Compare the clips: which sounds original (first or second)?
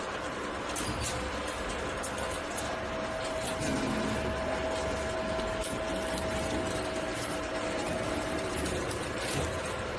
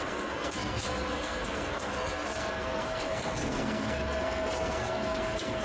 first